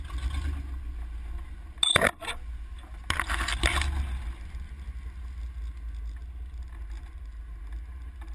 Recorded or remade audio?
recorded